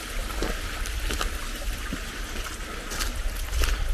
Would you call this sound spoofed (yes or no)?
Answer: no